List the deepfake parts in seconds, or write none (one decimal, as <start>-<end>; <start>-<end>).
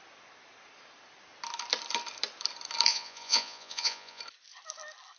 2.9-4.2